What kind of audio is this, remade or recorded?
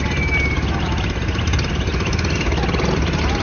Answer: recorded